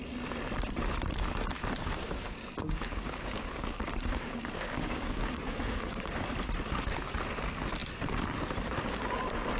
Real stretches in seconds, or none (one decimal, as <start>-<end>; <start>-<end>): 0.0-2.0; 6.1-9.6